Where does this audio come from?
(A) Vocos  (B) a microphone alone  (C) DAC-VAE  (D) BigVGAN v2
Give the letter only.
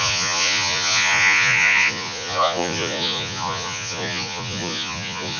A